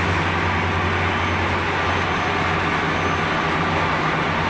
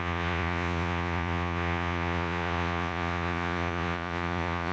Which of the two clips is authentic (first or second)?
first